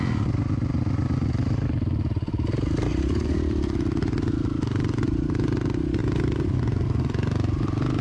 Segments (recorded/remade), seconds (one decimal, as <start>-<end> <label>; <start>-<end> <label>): 0.0-6.0 recorded; 6.0-6.6 remade; 6.6-8.0 recorded